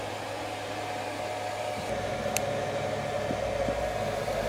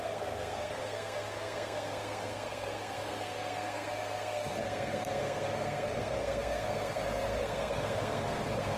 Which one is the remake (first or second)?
second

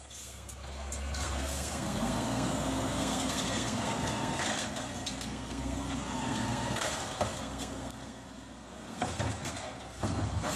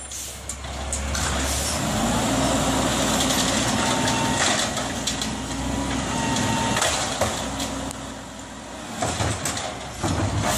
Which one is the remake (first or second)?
first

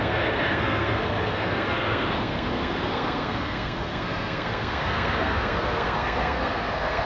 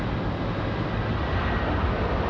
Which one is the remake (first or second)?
first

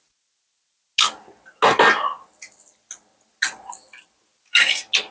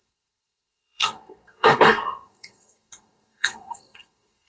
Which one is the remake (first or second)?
second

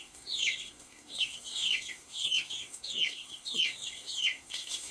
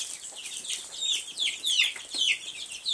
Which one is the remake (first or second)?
first